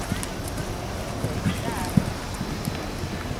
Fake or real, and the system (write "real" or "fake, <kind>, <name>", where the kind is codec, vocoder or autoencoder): real